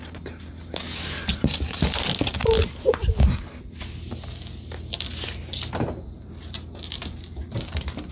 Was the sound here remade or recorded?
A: recorded